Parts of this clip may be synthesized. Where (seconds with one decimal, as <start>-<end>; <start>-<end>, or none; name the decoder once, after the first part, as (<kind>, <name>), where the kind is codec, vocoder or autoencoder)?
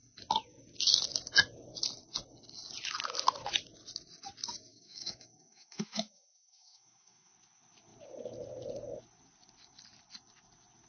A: 4.7-7.3 (autoencoder, DAC-VAE)